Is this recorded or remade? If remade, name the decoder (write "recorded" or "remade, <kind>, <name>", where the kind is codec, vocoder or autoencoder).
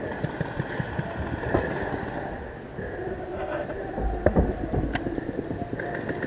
recorded